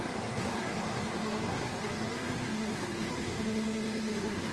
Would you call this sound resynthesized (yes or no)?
yes